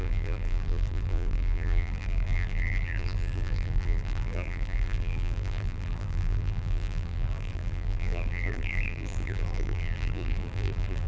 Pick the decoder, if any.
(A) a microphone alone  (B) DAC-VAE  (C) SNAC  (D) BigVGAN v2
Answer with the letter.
D